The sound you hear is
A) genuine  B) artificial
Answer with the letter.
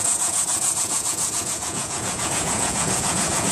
B